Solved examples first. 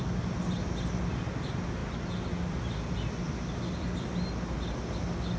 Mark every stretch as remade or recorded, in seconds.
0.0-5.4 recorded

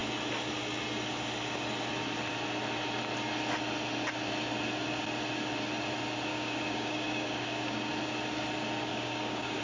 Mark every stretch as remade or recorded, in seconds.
0.0-6.3 recorded; 6.3-7.9 remade; 7.9-8.9 recorded; 8.9-9.6 remade

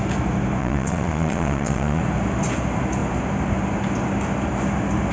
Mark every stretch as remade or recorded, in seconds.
0.0-0.6 recorded; 0.6-2.0 remade; 2.0-5.1 recorded

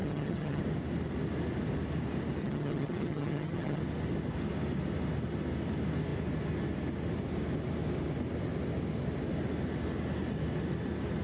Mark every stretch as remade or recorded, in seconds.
0.0-0.6 remade; 0.6-2.4 recorded; 2.4-3.8 remade; 3.8-11.2 recorded

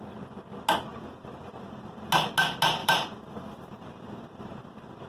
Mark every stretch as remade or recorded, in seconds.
0.0-0.9 recorded; 0.9-2.0 remade; 2.0-2.8 recorded; 2.8-4.6 remade; 4.6-5.1 recorded